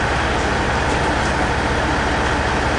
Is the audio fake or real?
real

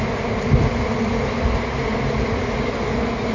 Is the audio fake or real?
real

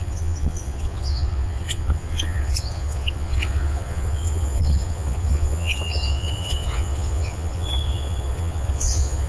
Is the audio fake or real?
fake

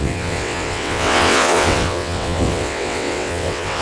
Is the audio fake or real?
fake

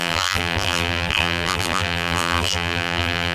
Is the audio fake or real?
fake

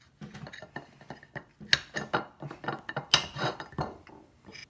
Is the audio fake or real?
real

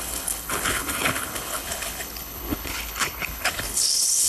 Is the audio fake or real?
fake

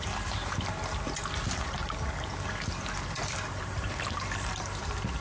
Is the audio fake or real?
real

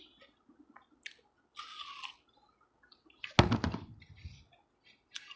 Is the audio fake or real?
real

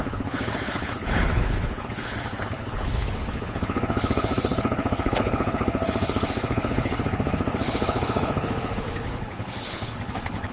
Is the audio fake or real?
fake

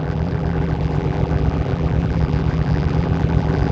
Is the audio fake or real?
fake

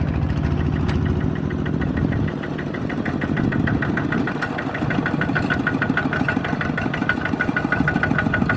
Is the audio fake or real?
real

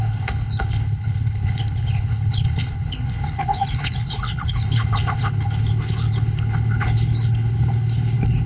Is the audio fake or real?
fake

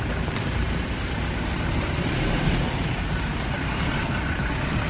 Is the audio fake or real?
fake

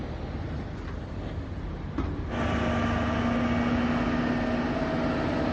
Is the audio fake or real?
real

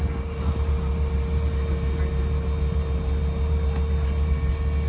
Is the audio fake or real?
real